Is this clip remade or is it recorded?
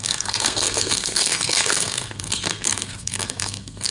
remade